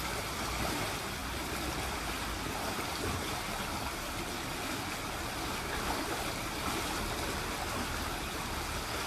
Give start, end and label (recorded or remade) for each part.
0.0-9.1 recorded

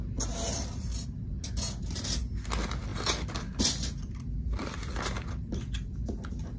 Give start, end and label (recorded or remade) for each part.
0.0-6.6 recorded

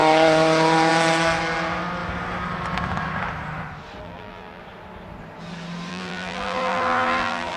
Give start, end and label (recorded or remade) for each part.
0.0-4.0 recorded; 4.0-4.6 remade; 4.6-5.9 recorded; 5.9-7.6 remade

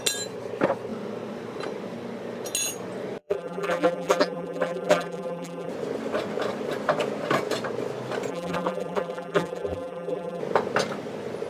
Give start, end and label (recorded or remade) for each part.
0.0-3.2 recorded; 3.2-5.7 remade; 5.7-8.3 recorded; 8.3-10.4 remade; 10.4-11.5 recorded

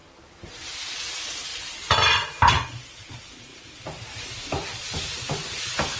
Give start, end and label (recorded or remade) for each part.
0.0-0.8 remade; 0.8-1.5 recorded; 1.5-2.5 remade; 2.5-3.5 recorded; 3.5-5.6 remade; 5.6-6.0 recorded